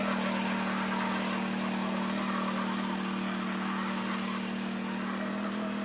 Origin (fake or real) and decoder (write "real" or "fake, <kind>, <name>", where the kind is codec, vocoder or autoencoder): real